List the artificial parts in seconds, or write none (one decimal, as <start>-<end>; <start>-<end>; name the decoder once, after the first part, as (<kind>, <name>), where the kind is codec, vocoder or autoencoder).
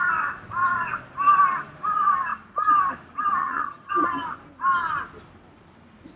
3.4-3.9 (vocoder, HiFi-GAN)